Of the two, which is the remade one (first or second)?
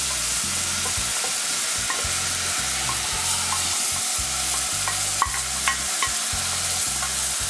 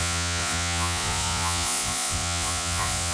second